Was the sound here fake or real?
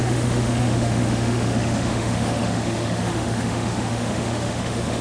fake